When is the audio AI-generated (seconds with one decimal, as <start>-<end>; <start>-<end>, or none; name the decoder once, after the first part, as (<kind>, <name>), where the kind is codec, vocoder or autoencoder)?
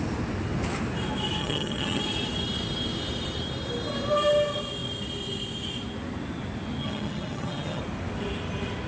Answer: 1.4-2.0 (vocoder, HiFi-GAN); 6.8-7.8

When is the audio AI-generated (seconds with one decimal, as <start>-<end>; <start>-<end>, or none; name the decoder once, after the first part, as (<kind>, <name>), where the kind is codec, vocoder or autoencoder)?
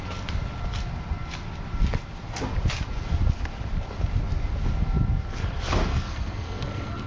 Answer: 5.9-7.1 (codec, SNAC)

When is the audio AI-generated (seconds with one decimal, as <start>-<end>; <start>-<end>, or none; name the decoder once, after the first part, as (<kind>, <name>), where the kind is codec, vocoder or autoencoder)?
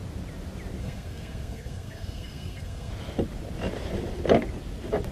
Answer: 0.8-2.9 (codec, SNAC)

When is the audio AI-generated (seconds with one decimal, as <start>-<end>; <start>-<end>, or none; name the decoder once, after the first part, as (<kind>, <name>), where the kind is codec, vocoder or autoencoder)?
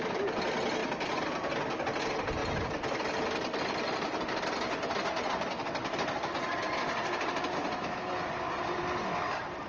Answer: 5.8-7.4 (vocoder, BigVGAN v2)